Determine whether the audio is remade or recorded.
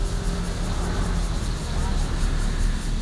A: recorded